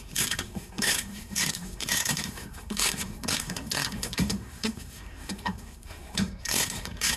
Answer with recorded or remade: remade